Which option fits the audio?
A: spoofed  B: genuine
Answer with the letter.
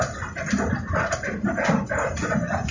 B